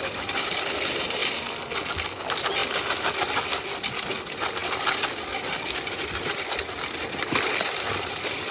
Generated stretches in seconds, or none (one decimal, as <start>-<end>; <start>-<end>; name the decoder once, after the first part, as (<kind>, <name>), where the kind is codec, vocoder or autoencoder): 2.6-4.1 (vocoder, BigVGAN v2)